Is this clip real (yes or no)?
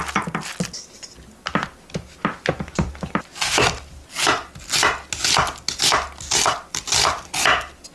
yes